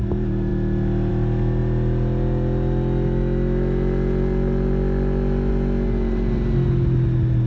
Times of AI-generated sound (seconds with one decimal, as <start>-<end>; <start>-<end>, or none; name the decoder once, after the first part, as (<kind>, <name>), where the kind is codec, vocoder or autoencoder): none